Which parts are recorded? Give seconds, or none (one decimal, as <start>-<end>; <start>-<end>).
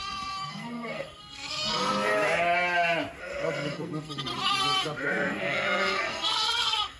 2.1-3.2; 4.3-5.0